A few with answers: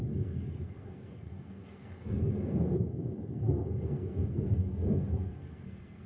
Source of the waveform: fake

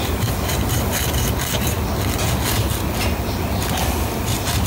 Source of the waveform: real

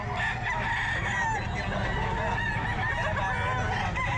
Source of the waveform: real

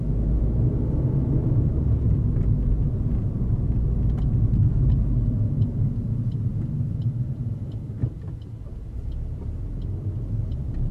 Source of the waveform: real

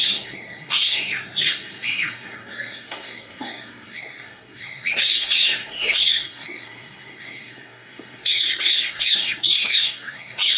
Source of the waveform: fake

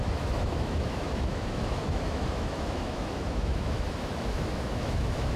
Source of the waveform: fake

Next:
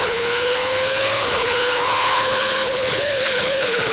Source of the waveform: fake